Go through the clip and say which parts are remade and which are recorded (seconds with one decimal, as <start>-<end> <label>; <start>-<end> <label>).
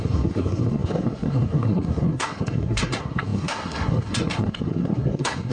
0.0-5.5 remade